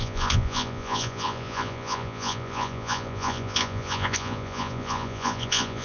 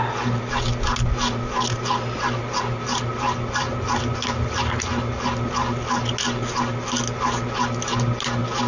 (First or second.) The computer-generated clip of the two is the first